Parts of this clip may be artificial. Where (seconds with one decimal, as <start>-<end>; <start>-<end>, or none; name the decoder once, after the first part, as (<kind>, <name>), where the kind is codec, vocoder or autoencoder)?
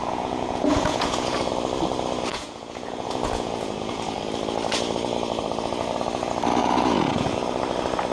0.0-1.5 (vocoder, Vocos); 2.3-4.2; 6.6-7.6